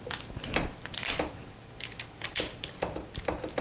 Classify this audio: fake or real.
fake